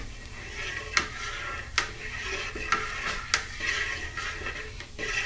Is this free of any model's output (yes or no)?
yes